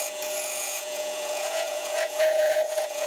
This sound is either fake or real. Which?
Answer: fake